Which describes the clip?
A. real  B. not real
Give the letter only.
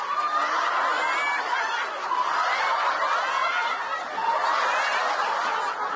A